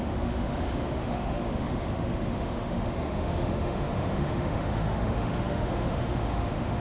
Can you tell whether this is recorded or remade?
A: remade